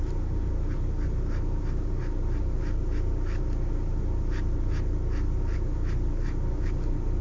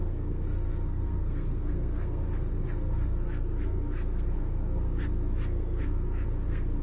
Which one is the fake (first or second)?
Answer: second